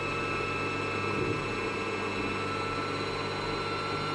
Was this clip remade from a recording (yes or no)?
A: no